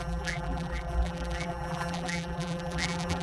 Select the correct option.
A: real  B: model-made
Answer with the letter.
B